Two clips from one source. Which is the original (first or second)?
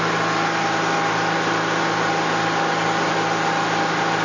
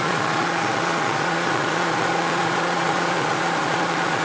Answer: first